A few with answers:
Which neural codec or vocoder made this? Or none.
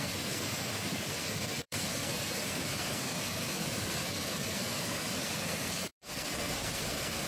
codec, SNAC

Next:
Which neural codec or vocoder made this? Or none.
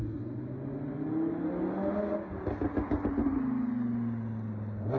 none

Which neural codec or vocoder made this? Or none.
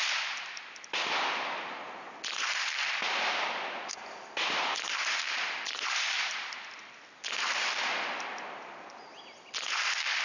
none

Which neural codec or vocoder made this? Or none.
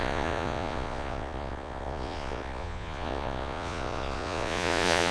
vocoder, Vocos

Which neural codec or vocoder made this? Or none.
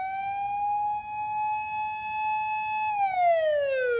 none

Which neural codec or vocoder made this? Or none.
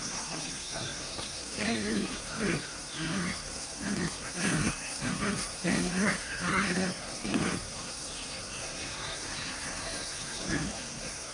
codec, SNAC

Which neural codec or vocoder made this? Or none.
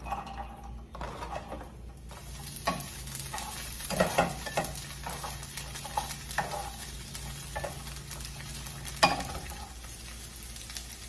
none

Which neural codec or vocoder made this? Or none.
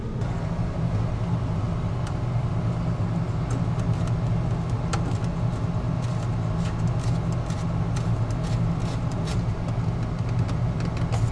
none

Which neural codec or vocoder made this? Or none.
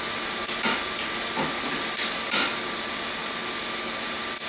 none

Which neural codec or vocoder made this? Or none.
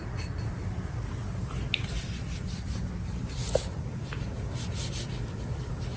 none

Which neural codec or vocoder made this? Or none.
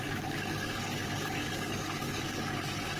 codec, DAC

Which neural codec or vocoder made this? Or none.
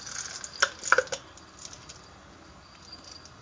none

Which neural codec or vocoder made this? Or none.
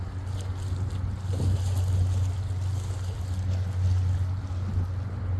none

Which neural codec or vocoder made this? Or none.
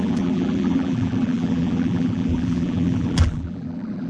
vocoder, BigVGAN v2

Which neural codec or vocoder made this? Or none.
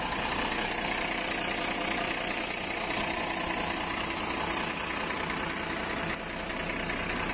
none